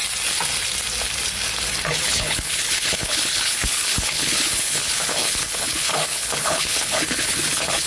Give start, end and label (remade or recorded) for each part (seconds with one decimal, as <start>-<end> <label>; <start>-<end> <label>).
0.0-2.0 recorded; 2.0-7.9 remade